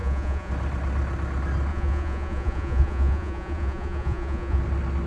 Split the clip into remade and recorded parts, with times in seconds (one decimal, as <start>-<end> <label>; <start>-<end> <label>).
0.0-0.5 remade; 0.5-1.7 recorded; 1.7-4.6 remade; 4.6-5.1 recorded